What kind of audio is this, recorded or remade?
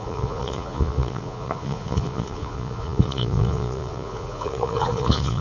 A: remade